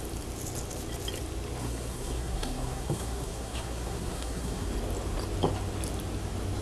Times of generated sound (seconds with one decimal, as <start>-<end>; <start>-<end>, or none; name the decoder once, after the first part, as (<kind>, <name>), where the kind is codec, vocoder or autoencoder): 1.6-4.7 (codec, SNAC)